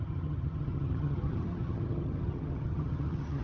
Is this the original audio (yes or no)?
no